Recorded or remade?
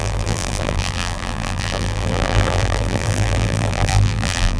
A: remade